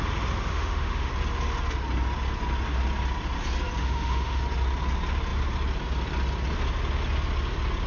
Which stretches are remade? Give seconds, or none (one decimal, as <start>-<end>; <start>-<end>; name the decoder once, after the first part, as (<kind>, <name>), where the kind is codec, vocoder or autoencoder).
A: 0.5-1.1 (autoencoder, DAC-VAE); 3.8-4.4